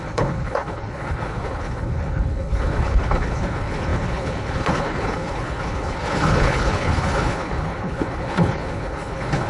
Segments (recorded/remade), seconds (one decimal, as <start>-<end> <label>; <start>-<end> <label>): 0.0-9.5 remade